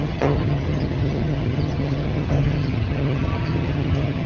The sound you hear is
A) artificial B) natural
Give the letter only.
A